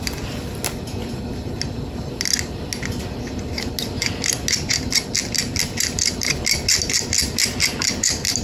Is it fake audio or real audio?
real